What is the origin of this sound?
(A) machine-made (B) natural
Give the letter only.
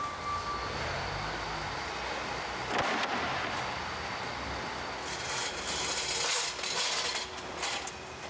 B